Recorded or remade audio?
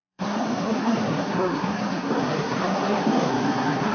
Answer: remade